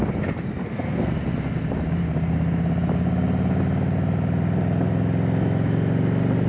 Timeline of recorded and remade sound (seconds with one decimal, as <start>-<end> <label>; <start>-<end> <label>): 0.0-0.6 recorded; 0.6-1.1 remade; 1.1-6.5 recorded